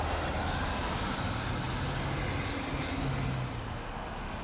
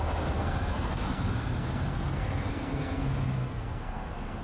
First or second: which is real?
first